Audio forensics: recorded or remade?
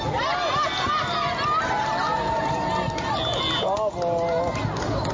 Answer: recorded